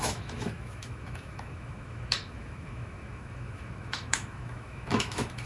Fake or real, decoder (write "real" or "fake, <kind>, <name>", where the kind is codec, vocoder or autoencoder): fake, autoencoder, DAC-VAE